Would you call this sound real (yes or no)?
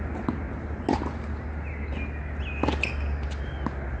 yes